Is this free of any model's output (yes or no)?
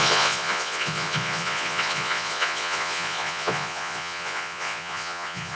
no